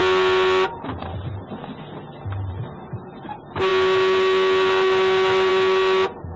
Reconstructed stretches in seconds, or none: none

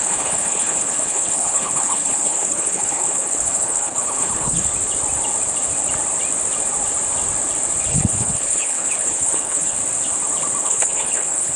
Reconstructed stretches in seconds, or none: 0.0-4.7 (codec, HILCodec); 7.9-9.8; 10.6-11.6